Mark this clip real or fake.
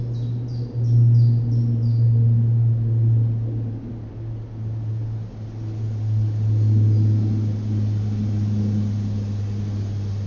real